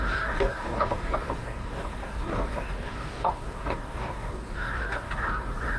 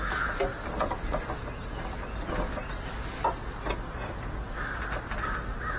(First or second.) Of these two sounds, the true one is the second